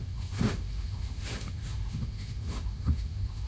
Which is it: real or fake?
fake